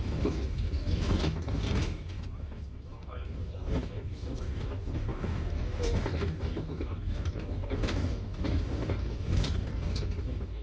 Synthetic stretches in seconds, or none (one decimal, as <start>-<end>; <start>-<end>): 0.0-10.6